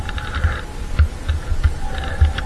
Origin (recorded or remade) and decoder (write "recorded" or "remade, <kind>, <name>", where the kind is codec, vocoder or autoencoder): recorded